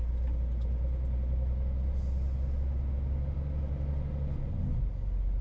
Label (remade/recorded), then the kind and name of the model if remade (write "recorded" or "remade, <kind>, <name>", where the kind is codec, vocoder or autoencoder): recorded